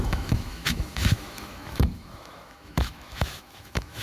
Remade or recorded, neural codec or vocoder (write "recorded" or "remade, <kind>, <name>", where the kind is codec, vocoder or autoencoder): remade, autoencoder, DAC-VAE